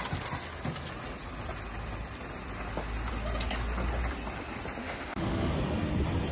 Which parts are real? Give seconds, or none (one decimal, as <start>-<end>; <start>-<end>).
0.0-4.8; 5.5-6.3